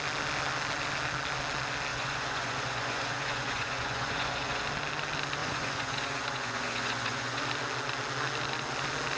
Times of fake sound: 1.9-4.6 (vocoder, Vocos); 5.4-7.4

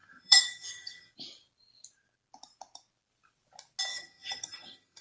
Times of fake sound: 0.0-1.1 (vocoder, HiFi-GAN); 3.9-5.0

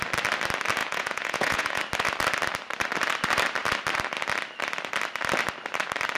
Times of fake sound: 0.8-1.8 (vocoder, Vocos)

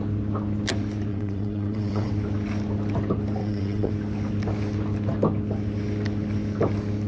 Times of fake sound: 1.1-2.1 (vocoder, WaveNeXt); 3.4-3.9

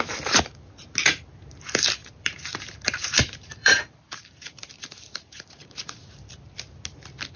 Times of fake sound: 2.0-6.4 (vocoder, BigVGAN v2)

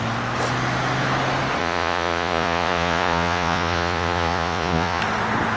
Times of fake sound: 1.6-5.0 (vocoder, Vocos)